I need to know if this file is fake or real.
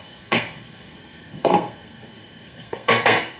fake